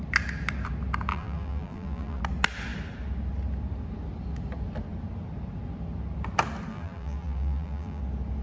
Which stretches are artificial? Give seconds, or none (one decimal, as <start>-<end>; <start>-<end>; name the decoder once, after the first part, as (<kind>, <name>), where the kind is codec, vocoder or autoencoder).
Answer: 1.1-2.2 (vocoder, BigVGAN v2); 6.7-8.0

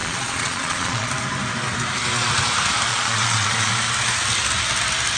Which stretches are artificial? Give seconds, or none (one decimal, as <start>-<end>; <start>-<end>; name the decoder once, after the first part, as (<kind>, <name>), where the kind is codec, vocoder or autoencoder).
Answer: 0.0-1.1 (vocoder, Vocos); 2.9-3.7

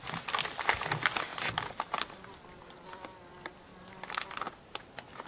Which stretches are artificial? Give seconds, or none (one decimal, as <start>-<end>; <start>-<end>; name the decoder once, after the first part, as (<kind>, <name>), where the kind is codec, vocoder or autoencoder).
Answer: none

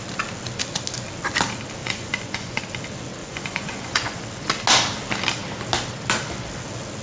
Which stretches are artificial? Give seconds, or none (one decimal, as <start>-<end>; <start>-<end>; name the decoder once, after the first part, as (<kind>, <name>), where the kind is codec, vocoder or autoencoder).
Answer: 1.8-2.6 (vocoder, Vocos); 3.2-4.2

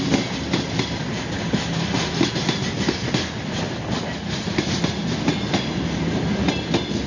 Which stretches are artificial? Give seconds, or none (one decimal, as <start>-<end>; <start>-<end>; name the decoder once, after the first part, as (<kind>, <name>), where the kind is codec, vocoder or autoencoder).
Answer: none

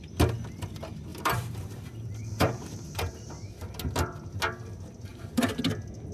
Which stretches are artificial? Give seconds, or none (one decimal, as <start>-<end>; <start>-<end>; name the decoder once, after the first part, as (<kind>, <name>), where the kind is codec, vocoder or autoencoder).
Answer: 1.1-3.1 (vocoder, BigVGAN v2); 5.1-5.6

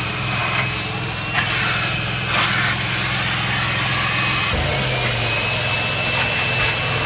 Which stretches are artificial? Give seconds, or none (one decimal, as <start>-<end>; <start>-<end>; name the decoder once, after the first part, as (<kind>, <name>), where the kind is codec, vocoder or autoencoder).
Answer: none

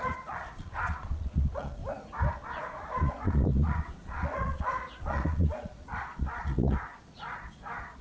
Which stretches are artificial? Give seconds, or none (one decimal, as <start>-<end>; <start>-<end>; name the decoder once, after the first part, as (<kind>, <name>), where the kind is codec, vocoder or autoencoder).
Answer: 0.0-1.8 (vocoder, Vocos); 2.3-8.0